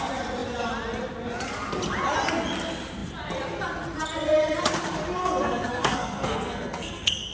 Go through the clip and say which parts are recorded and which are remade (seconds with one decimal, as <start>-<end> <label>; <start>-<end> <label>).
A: 0.0-5.2 recorded; 5.2-7.3 remade